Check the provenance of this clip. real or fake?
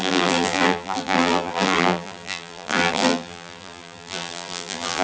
fake